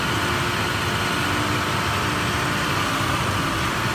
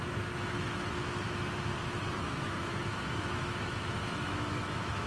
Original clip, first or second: first